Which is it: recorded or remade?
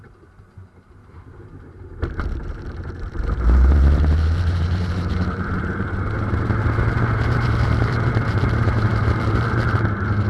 remade